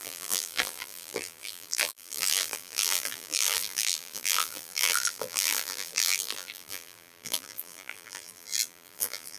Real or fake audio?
fake